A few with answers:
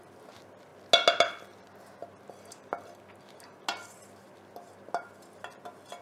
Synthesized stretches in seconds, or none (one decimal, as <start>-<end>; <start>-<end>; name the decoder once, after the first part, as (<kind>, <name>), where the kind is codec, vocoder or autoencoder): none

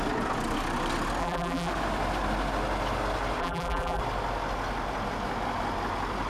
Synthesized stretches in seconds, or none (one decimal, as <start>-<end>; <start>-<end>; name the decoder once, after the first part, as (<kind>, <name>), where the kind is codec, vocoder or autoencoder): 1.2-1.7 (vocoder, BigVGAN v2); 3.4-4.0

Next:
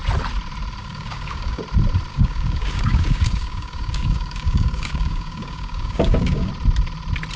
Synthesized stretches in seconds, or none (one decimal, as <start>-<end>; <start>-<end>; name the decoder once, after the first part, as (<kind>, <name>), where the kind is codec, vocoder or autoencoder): 0.8-1.6 (codec, DAC); 2.1-6.5

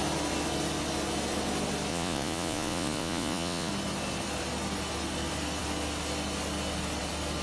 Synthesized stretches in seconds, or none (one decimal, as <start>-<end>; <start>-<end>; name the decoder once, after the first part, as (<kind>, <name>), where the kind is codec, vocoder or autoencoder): 1.9-3.7 (vocoder, Vocos)